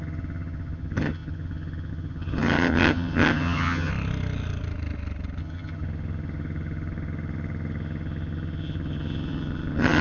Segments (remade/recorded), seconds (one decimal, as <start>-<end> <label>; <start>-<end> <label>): 0.0-3.9 remade; 3.9-5.4 recorded; 5.4-10.0 remade